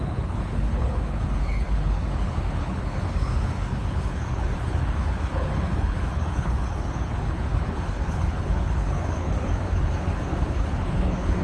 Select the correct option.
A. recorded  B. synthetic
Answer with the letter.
B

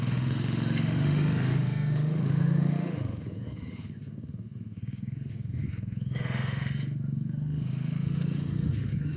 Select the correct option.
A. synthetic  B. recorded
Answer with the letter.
A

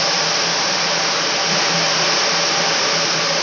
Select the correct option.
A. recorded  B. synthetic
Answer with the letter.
B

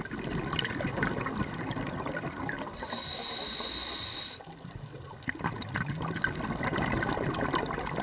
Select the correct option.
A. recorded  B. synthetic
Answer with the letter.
A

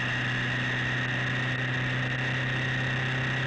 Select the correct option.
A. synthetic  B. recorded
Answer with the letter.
B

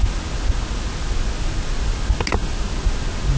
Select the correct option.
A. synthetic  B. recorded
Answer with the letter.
B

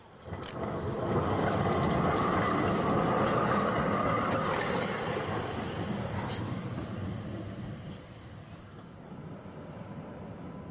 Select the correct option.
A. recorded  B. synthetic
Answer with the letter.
A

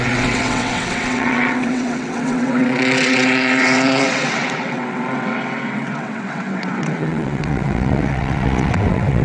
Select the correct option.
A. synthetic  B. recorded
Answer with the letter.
A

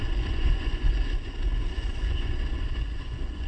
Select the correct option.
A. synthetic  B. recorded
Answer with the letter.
A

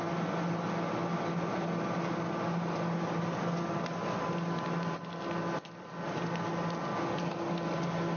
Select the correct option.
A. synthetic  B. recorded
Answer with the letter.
B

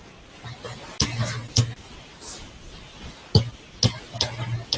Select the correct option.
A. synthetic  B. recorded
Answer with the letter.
B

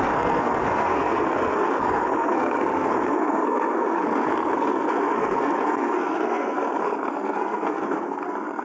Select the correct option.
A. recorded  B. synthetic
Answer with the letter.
B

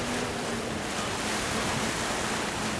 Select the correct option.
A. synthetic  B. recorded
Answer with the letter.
B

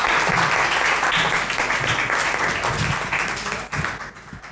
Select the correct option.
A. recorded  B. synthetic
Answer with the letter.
A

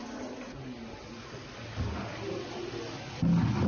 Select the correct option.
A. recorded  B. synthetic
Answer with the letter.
A